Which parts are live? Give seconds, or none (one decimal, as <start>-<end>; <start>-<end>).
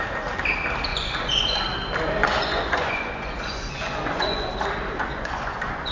0.0-0.9; 1.6-2.2; 4.5-5.1